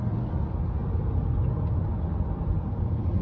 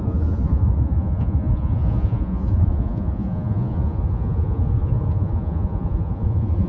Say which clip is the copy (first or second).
second